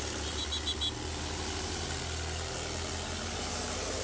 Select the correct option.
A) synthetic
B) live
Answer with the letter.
B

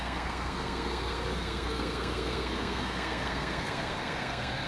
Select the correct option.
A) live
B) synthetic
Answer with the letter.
B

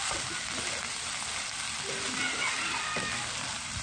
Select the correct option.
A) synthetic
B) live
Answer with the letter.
B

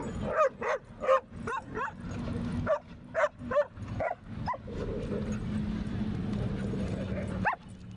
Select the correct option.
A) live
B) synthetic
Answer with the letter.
A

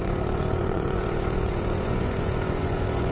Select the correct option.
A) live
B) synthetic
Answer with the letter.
B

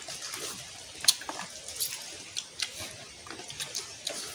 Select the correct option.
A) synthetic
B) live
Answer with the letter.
B